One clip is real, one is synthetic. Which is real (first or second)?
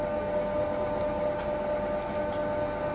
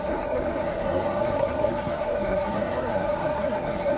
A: first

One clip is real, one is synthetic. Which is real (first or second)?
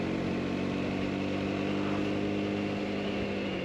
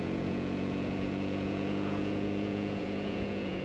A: first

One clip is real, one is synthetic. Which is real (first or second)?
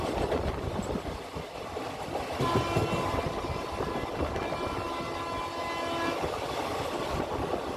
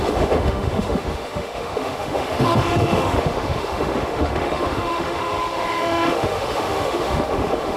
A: first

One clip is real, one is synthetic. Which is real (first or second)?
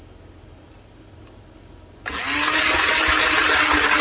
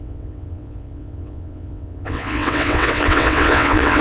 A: first